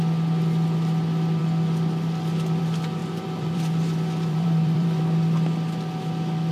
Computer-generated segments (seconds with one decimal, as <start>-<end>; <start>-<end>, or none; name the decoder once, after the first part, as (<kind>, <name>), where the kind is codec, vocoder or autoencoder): 3.0-5.0 (vocoder, BigVGAN v2)